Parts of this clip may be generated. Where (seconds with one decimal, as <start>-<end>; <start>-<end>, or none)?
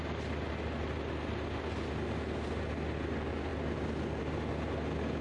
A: none